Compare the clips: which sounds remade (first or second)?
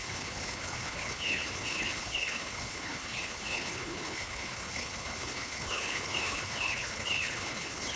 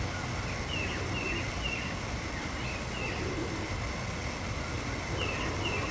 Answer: first